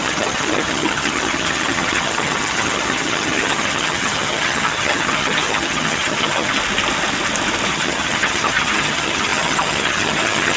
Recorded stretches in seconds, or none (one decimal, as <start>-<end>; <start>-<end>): 6.5-7.7